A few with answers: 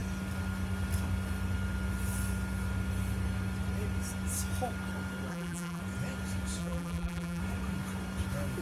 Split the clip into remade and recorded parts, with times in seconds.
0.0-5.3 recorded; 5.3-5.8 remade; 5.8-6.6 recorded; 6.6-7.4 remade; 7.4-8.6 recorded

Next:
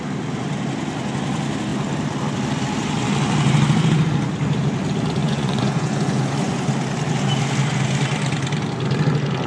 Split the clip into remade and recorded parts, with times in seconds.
0.0-5.2 recorded; 5.2-6.7 remade; 6.7-9.5 recorded

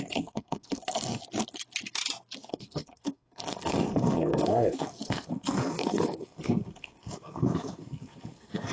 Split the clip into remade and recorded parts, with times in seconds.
0.0-1.2 remade; 1.2-2.5 recorded; 2.5-8.7 remade

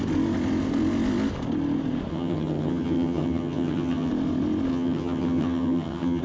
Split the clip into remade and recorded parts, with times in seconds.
0.0-2.1 recorded; 2.1-4.1 remade; 4.1-4.7 recorded; 4.7-6.2 remade

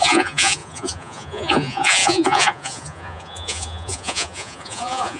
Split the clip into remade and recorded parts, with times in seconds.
0.0-5.2 remade

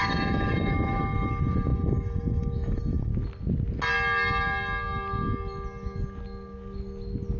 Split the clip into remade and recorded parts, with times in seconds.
0.0-3.1 remade; 3.1-7.4 recorded

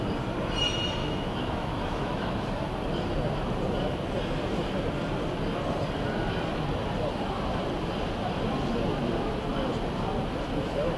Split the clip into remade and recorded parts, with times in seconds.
0.0-1.0 recorded; 1.0-2.6 remade; 2.6-11.0 recorded

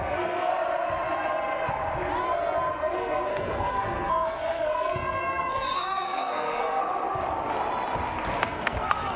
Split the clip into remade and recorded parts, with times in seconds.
0.0-0.5 remade; 0.5-2.7 recorded; 2.7-6.8 remade; 6.8-8.4 recorded; 8.4-9.2 remade